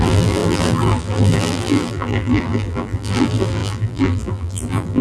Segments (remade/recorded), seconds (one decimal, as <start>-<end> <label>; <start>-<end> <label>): 0.0-5.0 remade